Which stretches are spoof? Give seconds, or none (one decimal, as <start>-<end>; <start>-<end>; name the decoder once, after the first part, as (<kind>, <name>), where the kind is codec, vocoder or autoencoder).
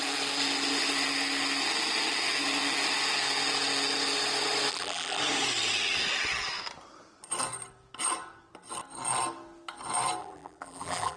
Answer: 4.7-5.2 (vocoder, BigVGAN v2); 10.2-11.2